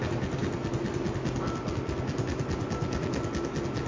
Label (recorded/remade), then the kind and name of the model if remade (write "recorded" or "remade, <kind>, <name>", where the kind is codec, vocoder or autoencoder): recorded